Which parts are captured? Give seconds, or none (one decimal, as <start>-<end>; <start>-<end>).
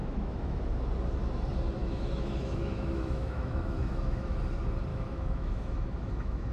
0.6-1.8; 4.4-4.9